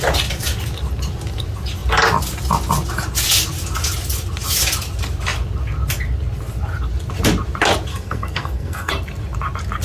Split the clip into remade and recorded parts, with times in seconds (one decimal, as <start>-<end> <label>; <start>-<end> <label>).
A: 0.0-7.9 recorded; 7.9-8.9 remade; 8.9-9.8 recorded